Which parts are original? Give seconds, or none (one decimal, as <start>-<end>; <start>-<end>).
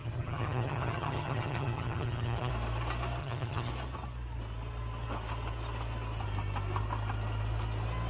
2.5-3.2; 3.7-8.1